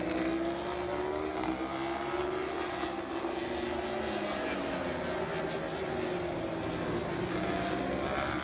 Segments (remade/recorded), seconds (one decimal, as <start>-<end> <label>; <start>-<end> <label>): 0.0-8.4 recorded